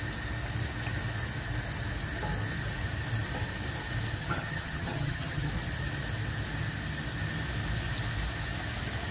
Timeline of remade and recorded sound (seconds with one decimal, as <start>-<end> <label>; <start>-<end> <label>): 0.0-4.2 recorded; 4.2-5.5 remade; 5.5-9.1 recorded